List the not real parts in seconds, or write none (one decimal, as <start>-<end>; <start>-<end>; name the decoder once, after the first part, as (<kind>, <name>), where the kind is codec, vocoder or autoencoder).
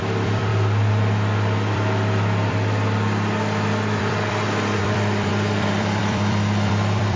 0.0-7.2 (vocoder, BigVGAN v2)